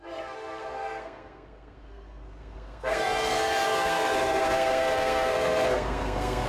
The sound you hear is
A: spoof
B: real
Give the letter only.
A